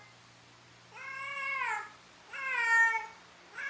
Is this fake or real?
real